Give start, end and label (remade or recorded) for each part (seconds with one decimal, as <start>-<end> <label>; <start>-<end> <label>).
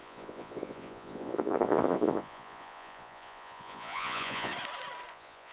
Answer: 0.0-4.5 remade; 4.5-5.1 recorded; 5.1-5.5 remade